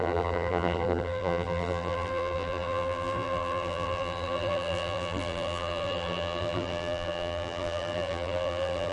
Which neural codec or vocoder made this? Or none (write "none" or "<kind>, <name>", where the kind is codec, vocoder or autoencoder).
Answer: vocoder, BigVGAN v2